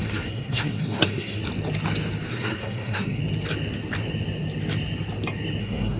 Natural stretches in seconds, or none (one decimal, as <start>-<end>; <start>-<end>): 1.4-2.3; 3.2-5.6